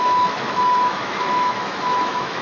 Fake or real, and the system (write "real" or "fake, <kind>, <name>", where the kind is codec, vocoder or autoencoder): fake, autoencoder, DAC-VAE